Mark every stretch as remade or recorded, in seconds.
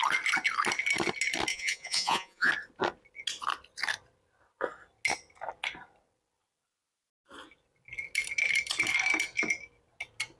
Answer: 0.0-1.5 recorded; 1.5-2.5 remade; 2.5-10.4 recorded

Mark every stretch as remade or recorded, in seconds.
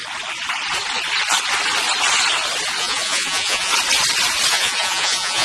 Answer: 0.0-2.8 recorded; 2.8-3.7 remade; 3.7-4.5 recorded; 4.5-5.4 remade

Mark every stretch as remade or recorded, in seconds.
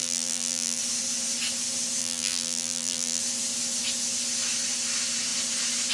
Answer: 0.0-0.8 remade; 0.8-2.0 recorded; 2.0-3.2 remade; 3.2-5.9 recorded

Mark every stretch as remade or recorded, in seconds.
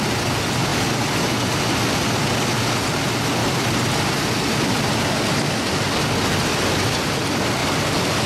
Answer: 0.0-3.4 recorded; 3.4-4.1 remade; 4.1-7.6 recorded; 7.6-8.3 remade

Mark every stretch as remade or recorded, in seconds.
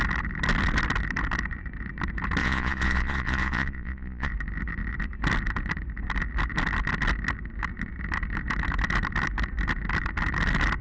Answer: 0.0-2.4 recorded; 2.4-4.3 remade; 4.3-10.8 recorded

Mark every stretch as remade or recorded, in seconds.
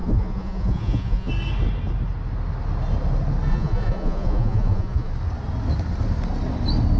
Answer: 0.0-1.3 remade; 1.3-3.5 recorded; 3.5-5.1 remade; 5.1-7.0 recorded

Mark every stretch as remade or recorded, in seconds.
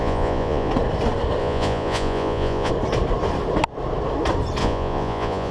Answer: 0.0-0.7 remade; 0.7-1.4 recorded; 1.4-2.7 remade; 2.7-4.6 recorded; 4.6-5.5 remade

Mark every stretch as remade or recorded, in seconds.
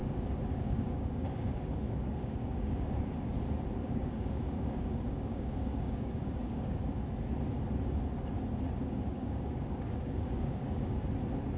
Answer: 0.0-3.0 remade; 3.0-3.8 recorded; 3.8-6.8 remade; 6.8-8.8 recorded; 8.8-11.0 remade; 11.0-11.6 recorded